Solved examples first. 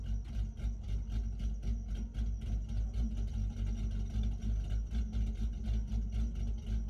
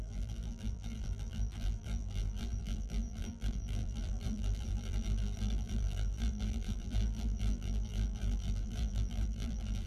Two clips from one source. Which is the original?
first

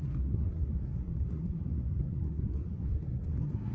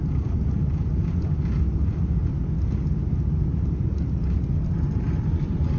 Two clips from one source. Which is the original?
second